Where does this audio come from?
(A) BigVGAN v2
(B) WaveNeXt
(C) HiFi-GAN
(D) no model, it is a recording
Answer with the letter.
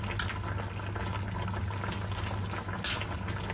D